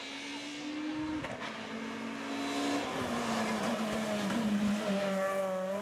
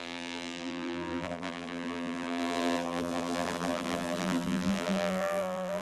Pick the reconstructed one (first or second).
second